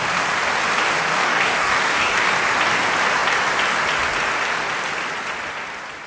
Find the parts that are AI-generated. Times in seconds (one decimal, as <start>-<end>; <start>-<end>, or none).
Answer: 1.1-2.2